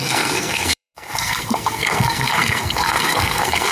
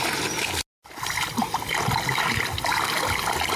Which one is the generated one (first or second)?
first